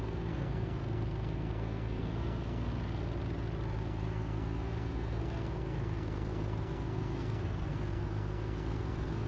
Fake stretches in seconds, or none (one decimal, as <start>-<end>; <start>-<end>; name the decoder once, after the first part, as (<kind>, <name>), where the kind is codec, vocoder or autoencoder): 0.0-2.7 (codec, SNAC); 3.8-9.3